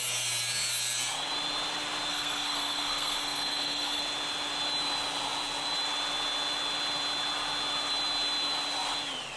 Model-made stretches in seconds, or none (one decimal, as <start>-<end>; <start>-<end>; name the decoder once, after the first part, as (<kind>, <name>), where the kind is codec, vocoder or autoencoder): 2.1-4.0 (codec, SNAC)